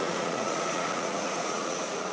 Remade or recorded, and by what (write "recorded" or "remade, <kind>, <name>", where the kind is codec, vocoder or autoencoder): remade, vocoder, Vocos